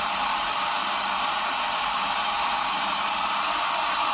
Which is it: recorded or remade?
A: remade